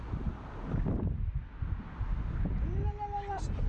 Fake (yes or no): no